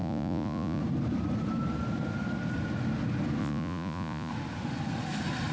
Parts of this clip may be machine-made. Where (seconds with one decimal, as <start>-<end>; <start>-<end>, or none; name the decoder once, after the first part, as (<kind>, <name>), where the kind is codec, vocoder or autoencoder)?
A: 0.0-0.8 (vocoder, Vocos); 3.4-4.3